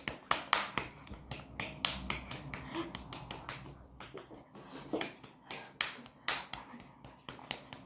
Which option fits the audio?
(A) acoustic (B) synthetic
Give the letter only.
A